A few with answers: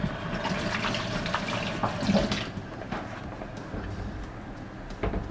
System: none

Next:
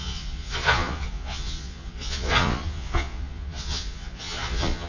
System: vocoder, Vocos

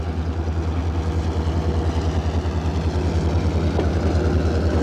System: none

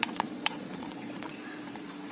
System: vocoder, Vocos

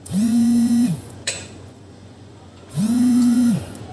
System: vocoder, Vocos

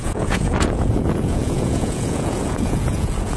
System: vocoder, Vocos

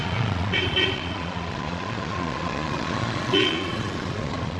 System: vocoder, Vocos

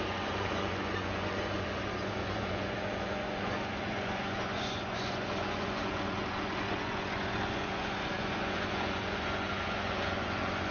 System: vocoder, Vocos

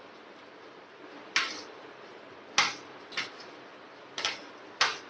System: none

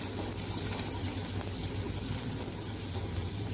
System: none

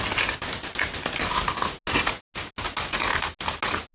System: none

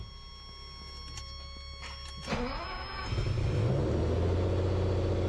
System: none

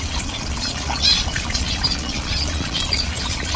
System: vocoder, Vocos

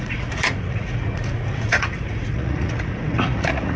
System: vocoder, Vocos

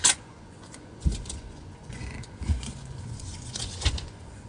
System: vocoder, Vocos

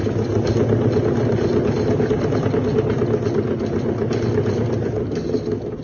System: none